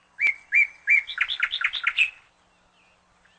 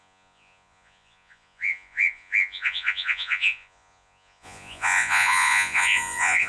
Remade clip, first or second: second